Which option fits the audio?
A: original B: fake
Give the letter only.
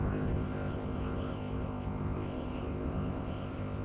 B